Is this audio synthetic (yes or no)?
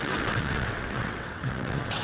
yes